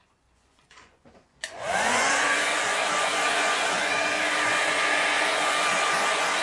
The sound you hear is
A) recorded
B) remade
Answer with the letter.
B